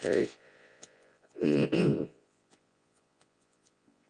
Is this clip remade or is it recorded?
remade